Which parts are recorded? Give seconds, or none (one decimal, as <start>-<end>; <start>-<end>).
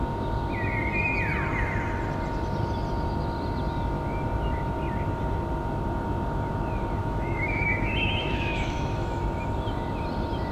0.0-7.0; 9.2-10.5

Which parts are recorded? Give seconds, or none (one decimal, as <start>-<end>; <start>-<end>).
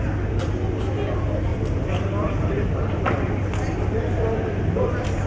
0.0-5.3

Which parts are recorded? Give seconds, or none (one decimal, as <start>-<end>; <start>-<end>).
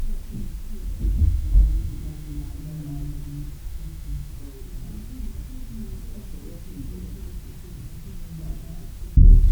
0.0-1.2; 2.5-3.7; 4.3-9.5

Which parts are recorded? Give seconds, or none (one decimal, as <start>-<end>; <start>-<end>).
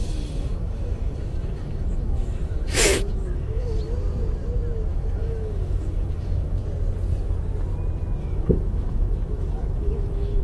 3.8-4.9; 6.6-8.2